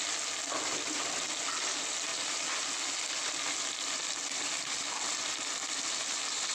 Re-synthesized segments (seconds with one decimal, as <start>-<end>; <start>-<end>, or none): none